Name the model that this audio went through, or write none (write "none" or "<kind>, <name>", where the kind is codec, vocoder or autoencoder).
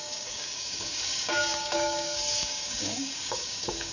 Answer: codec, DAC